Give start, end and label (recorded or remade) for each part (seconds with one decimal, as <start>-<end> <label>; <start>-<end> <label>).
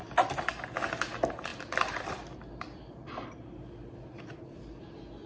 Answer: 0.0-5.3 recorded